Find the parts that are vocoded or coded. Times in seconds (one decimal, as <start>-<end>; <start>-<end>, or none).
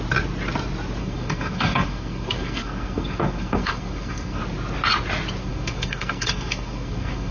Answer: 1.0-4.4; 5.4-7.3